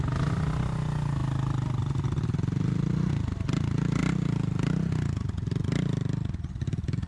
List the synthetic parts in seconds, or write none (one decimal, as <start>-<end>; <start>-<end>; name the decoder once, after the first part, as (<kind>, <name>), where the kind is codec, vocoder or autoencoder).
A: none